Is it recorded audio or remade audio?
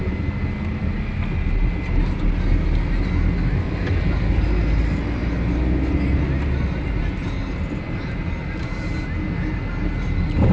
recorded